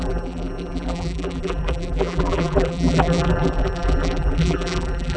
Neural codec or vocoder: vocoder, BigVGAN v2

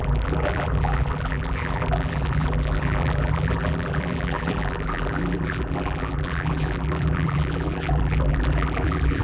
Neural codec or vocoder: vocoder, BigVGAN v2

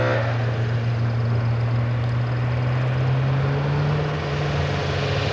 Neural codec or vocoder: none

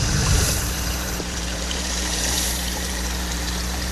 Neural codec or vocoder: vocoder, BigVGAN v2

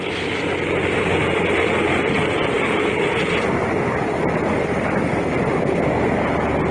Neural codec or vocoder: none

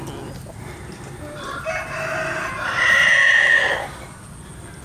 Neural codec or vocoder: none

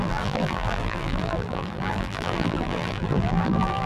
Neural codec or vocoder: vocoder, BigVGAN v2